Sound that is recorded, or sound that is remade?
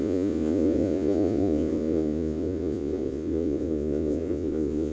remade